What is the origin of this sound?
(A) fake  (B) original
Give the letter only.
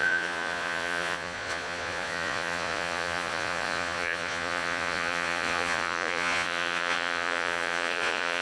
A